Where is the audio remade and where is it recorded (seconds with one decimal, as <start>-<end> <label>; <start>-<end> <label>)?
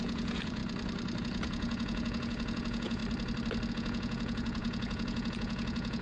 0.0-0.6 remade; 0.6-1.2 recorded; 1.2-3.0 remade; 3.0-3.7 recorded; 3.7-6.0 remade